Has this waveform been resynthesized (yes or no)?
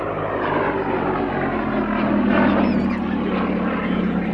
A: no